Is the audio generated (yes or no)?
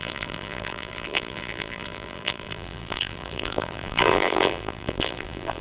yes